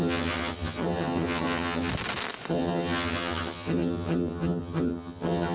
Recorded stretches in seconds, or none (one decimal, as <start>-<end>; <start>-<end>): 1.9-2.5